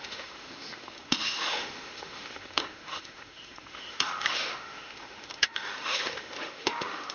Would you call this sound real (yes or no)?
no